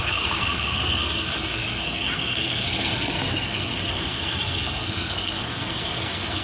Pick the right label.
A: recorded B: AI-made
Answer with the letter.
B